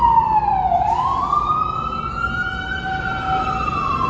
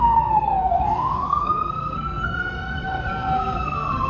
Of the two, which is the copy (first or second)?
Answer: second